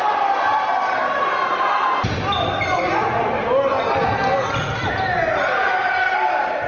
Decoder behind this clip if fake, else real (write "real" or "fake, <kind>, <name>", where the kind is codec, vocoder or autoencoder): real